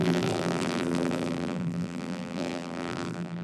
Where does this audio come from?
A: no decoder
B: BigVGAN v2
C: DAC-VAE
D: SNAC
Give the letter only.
B